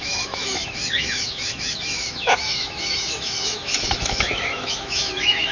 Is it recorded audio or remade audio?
remade